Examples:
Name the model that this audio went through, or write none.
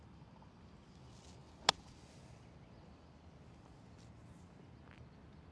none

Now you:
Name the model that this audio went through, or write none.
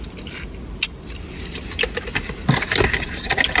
none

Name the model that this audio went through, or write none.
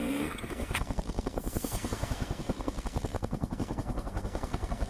codec, SNAC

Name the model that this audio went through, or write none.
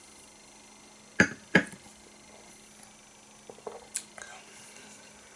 none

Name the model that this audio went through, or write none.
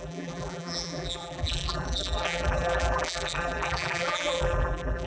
vocoder, BigVGAN v2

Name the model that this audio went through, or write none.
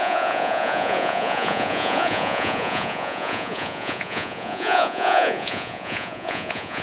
vocoder, Vocos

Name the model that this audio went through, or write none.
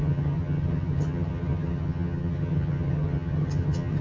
vocoder, HiFi-GAN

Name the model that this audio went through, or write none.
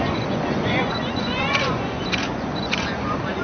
vocoder, Vocos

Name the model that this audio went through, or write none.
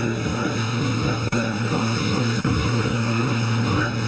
codec, SNAC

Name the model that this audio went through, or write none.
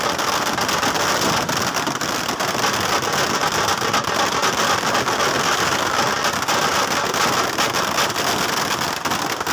none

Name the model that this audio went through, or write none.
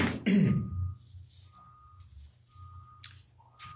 none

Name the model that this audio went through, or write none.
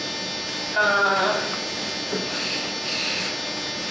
none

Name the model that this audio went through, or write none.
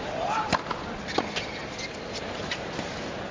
none